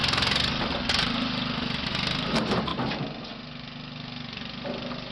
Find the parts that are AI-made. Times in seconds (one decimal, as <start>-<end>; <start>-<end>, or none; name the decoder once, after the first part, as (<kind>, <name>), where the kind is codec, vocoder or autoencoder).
none